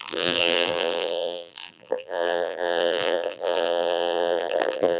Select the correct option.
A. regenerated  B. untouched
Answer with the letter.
A